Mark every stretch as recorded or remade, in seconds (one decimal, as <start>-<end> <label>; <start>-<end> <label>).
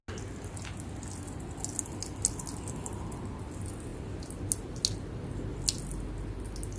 0.0-6.8 recorded